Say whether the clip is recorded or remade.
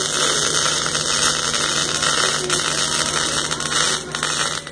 recorded